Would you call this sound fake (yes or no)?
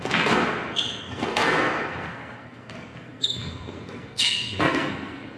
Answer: yes